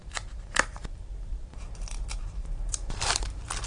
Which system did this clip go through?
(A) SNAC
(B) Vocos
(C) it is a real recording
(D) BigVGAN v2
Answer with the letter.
D